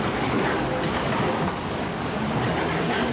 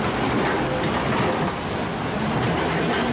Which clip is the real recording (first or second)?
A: second